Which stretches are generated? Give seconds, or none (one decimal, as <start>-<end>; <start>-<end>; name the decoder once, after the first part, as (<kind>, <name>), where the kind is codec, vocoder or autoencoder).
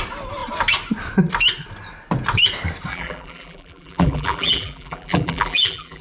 2.9-6.0 (vocoder, BigVGAN v2)